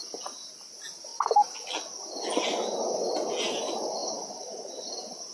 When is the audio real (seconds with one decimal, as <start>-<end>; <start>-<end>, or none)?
0.0-5.3